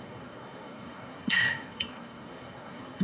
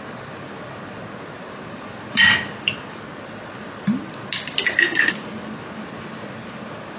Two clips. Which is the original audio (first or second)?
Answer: second